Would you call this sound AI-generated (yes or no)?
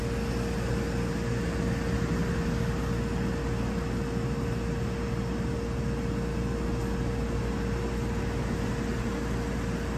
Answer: no